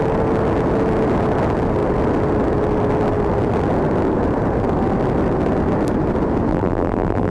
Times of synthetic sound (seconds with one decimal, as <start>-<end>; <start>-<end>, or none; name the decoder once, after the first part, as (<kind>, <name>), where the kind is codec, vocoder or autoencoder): 6.5-7.3 (vocoder, BigVGAN v2)